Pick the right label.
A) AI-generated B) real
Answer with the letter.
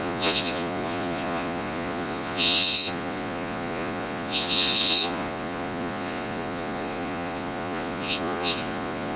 A